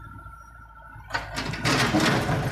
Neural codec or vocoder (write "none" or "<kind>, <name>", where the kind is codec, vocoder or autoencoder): none